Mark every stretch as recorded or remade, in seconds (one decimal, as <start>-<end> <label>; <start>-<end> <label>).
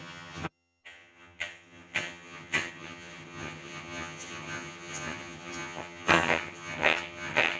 0.0-7.6 remade